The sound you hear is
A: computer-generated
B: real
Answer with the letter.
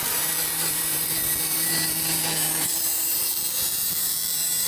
A